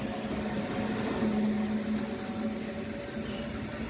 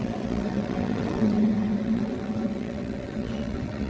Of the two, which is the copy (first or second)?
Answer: second